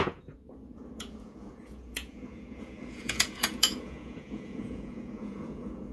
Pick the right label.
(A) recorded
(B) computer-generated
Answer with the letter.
B